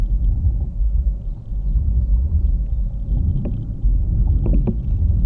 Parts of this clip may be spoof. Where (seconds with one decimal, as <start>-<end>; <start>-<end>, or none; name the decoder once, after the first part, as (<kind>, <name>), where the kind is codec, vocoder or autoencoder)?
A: none